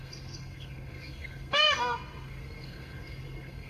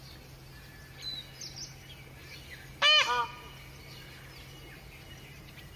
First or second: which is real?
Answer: second